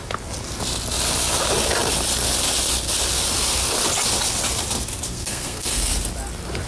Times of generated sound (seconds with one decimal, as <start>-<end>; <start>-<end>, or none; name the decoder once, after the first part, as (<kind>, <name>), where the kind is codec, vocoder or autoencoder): 5.1-5.9 (codec, SNAC)